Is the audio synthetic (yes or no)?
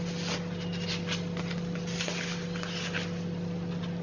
no